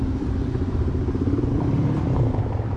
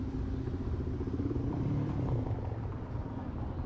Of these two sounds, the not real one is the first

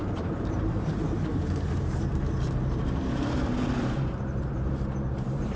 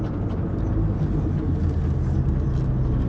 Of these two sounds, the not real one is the first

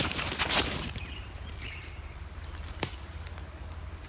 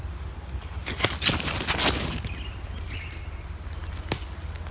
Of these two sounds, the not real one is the first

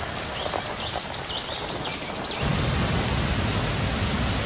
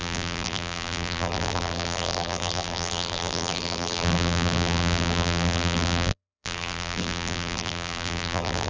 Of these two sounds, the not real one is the second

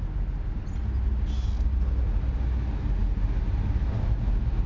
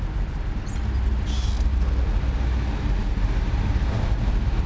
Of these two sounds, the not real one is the second